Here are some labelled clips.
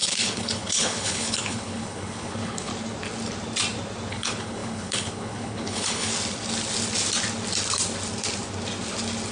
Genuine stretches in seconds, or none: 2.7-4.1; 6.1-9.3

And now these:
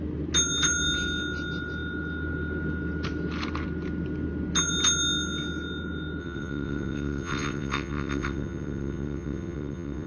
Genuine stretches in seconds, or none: 0.0-6.2